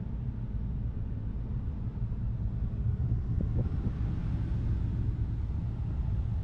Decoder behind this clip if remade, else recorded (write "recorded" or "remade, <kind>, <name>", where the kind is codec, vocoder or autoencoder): recorded